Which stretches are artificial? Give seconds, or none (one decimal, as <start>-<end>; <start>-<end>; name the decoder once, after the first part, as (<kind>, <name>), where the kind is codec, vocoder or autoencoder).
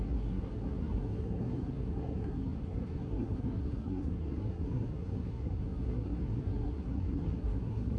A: 0.0-8.0 (codec, SNAC)